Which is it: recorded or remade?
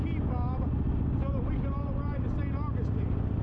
recorded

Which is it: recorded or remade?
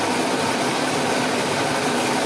recorded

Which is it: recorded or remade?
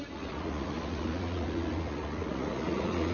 remade